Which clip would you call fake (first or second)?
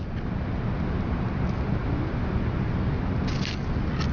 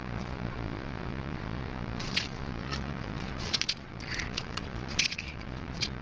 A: second